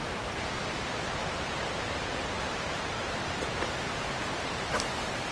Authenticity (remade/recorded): remade